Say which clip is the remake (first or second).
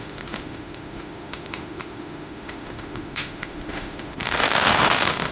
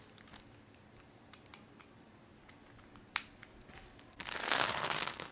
first